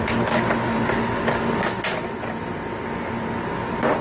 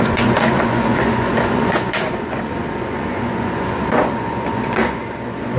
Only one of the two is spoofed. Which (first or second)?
second